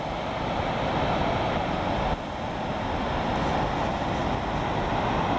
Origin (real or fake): real